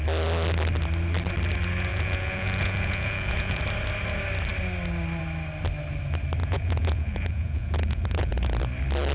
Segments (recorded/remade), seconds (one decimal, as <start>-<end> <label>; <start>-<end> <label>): 0.0-1.9 recorded; 1.9-3.6 remade; 3.6-6.4 recorded; 6.4-8.6 remade; 8.6-9.1 recorded